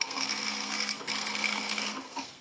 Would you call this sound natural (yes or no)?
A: no